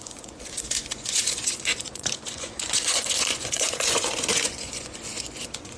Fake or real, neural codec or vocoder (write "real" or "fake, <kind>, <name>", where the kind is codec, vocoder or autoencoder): fake, vocoder, Vocos